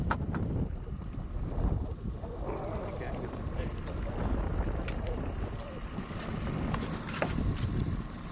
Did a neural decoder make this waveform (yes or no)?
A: no